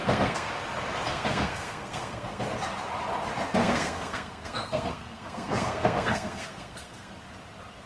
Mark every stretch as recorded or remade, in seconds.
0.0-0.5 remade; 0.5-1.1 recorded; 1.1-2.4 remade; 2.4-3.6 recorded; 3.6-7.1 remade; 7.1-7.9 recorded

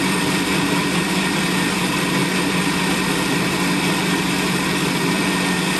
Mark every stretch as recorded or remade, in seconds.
0.0-5.8 remade

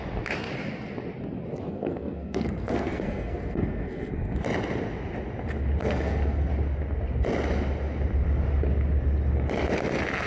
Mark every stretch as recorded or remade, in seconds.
0.0-1.7 recorded; 1.7-4.4 remade; 4.4-5.8 recorded; 5.8-6.5 remade; 6.5-10.3 recorded

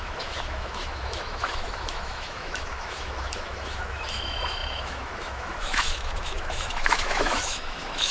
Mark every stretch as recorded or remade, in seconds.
0.0-8.1 remade

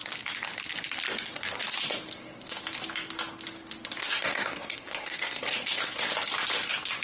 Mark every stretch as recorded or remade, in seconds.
0.0-4.0 recorded; 4.0-5.4 remade; 5.4-7.0 recorded